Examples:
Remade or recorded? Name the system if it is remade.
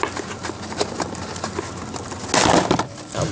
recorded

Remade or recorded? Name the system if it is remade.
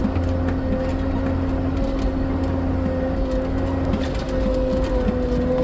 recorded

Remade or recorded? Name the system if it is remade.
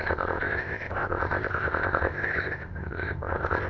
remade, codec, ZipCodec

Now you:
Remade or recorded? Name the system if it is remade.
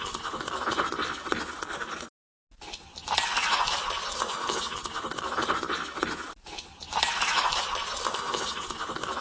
recorded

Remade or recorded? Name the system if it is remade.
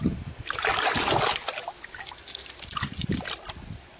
recorded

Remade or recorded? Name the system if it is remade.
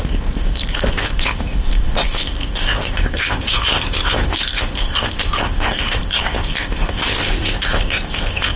remade, codec, ZipCodec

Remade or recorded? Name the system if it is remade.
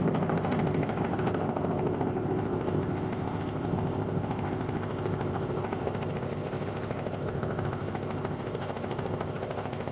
remade, codec, ZipCodec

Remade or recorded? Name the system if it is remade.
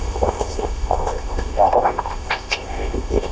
remade, codec, ZipCodec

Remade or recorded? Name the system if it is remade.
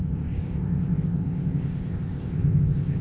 remade, codec, ZipCodec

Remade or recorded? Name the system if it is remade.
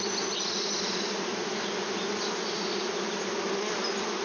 recorded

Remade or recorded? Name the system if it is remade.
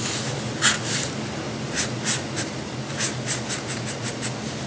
recorded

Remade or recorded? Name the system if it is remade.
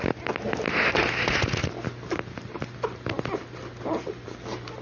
recorded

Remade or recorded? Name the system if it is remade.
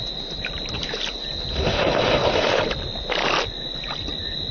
recorded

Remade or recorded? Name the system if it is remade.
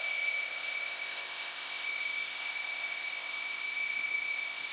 remade, codec, ZipCodec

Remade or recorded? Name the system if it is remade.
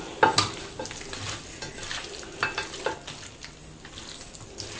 recorded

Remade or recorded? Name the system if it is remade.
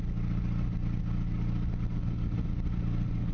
recorded